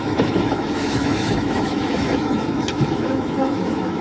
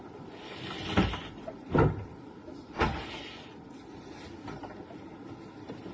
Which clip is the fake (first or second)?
first